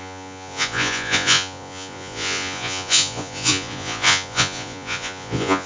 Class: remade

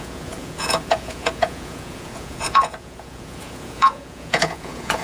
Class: remade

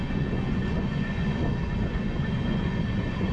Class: remade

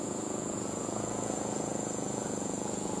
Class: remade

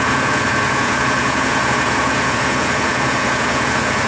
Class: remade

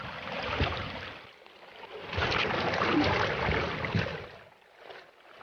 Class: recorded